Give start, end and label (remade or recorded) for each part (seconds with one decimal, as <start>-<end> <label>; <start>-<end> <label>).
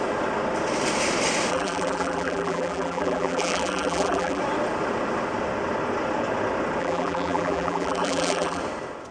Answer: 0.0-1.5 recorded; 1.5-4.4 remade; 4.4-6.8 recorded; 6.8-8.6 remade; 8.6-9.1 recorded